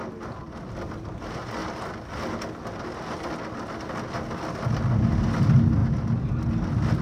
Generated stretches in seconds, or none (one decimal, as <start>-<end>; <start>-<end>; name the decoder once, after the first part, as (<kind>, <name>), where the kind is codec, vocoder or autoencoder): none

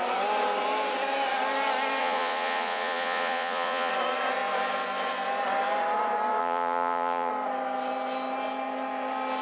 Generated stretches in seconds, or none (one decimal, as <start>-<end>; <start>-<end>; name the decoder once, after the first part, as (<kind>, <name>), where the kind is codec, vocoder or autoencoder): 2.0-3.9 (vocoder, Vocos); 6.4-7.3

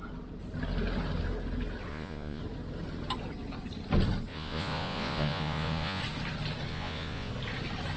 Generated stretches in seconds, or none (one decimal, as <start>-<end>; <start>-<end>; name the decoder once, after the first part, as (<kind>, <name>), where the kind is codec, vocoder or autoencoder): 1.9-2.4 (vocoder, Vocos); 4.3-6.0; 6.7-7.3

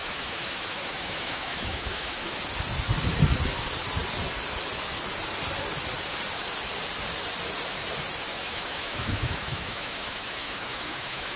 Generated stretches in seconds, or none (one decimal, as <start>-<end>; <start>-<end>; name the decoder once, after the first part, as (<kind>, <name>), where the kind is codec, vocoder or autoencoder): 0.0-2.3 (autoencoder, DAC-VAE); 8.3-11.4